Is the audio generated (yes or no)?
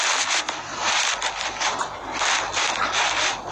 yes